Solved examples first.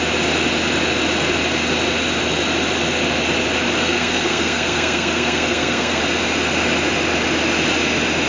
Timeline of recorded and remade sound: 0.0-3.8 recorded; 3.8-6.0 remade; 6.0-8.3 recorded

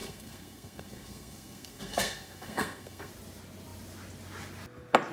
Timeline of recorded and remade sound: 0.0-3.1 remade; 3.1-5.1 recorded

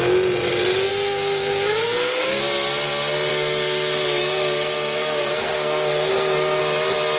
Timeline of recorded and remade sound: 0.0-0.9 recorded; 0.9-2.4 remade; 2.4-3.3 recorded; 3.3-6.6 remade; 6.6-7.2 recorded

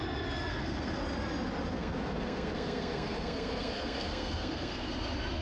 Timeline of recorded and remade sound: 0.0-0.5 recorded; 0.5-1.0 remade; 1.0-1.7 recorded; 1.7-4.9 remade; 4.9-5.4 recorded

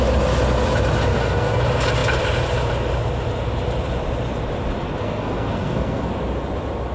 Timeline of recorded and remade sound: 0.0-1.1 recorded; 1.1-1.6 remade; 1.6-5.0 recorded; 5.0-6.1 remade; 6.1-6.9 recorded

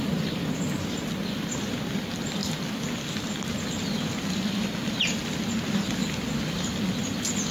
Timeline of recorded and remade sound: 0.0-7.5 recorded

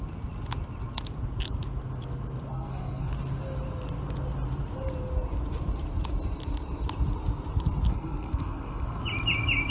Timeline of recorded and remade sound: 0.0-2.5 recorded; 2.5-3.1 remade; 3.1-7.9 recorded; 7.9-9.0 remade; 9.0-9.7 recorded

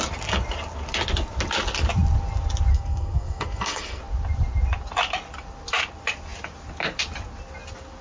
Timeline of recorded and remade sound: 0.0-2.7 recorded; 2.7-4.0 remade; 4.0-8.0 recorded